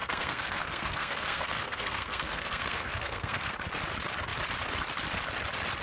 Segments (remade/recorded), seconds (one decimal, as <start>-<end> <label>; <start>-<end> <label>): 0.0-3.5 remade; 3.5-5.8 recorded